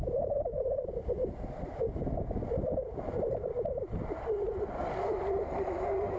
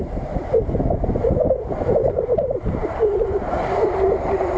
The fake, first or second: second